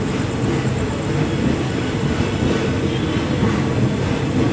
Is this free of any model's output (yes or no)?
yes